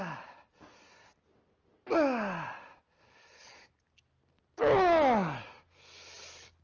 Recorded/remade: recorded